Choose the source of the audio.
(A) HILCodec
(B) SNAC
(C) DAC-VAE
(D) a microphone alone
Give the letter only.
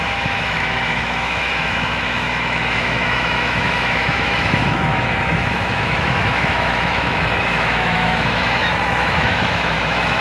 C